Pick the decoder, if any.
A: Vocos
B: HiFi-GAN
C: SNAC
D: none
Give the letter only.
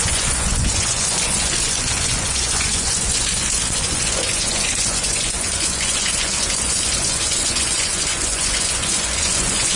A